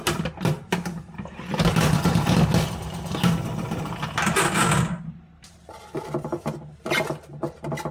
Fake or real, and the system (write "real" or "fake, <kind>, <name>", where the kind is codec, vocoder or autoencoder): real